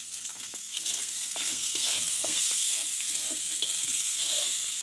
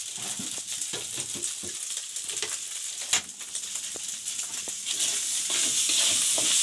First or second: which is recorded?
second